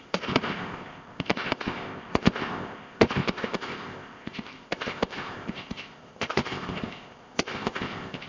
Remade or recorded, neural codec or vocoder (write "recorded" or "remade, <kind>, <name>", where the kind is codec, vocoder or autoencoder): remade, codec, ZipCodec